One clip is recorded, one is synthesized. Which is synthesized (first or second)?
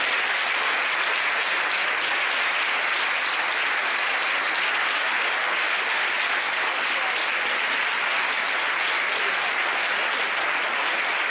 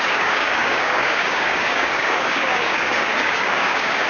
second